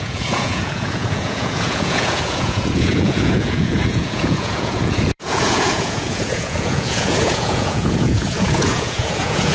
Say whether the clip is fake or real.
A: fake